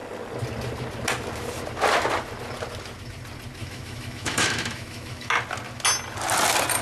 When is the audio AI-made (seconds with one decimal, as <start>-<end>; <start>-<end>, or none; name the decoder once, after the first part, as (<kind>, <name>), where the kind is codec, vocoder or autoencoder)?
3.6-5.3 (autoencoder, DAC-VAE)